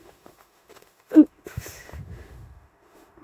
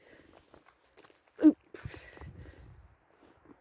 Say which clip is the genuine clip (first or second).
second